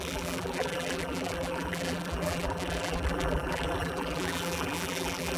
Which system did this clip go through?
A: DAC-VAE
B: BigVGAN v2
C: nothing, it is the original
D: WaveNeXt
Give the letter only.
B